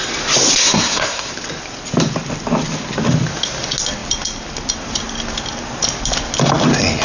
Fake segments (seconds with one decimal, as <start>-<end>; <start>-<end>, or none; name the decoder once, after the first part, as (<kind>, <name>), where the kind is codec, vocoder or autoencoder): 0.6-1.3 (codec, SNAC)